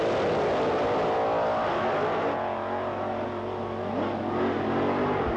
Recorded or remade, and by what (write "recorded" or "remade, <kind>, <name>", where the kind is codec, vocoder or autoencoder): recorded